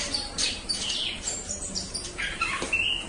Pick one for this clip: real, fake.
fake